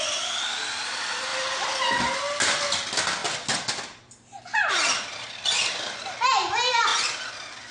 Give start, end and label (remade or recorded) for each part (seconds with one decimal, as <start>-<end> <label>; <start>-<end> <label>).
0.0-7.7 recorded

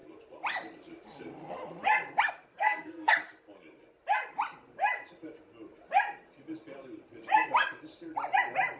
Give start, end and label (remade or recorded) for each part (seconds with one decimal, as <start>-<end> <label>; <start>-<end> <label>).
0.0-2.5 recorded; 2.5-3.1 remade; 3.1-8.8 recorded

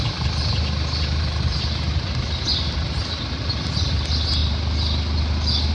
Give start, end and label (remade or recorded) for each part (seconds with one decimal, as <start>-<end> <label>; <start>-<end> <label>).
0.0-5.7 recorded

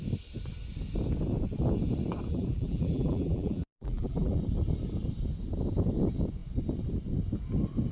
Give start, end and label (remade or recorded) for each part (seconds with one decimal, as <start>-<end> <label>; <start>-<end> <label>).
0.0-2.3 recorded; 2.3-4.4 remade; 4.4-7.9 recorded

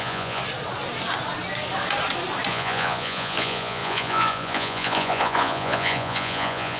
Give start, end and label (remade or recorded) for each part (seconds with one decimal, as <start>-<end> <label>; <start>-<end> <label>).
0.0-0.4 remade; 0.4-2.5 recorded; 2.5-6.8 remade

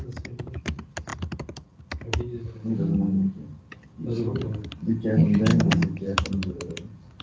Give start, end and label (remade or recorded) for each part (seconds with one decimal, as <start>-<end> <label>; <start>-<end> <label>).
0.0-5.5 recorded; 5.5-6.7 remade; 6.7-7.2 recorded

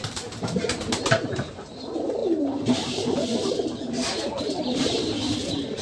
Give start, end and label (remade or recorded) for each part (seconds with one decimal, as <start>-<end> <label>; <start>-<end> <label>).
0.0-5.8 remade